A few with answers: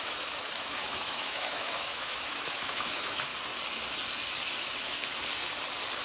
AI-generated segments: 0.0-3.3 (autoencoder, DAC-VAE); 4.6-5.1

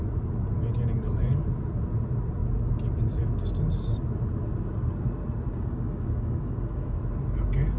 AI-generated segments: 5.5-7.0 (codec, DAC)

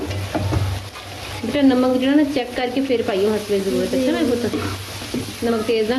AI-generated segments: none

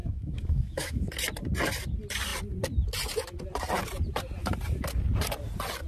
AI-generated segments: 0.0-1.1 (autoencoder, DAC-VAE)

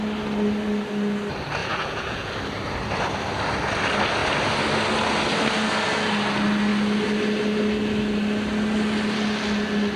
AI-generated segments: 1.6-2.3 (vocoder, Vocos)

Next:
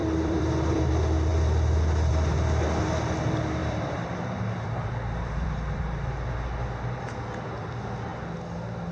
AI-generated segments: 0.0-0.9 (vocoder, BigVGAN v2); 3.6-5.8